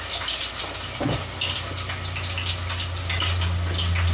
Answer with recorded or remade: recorded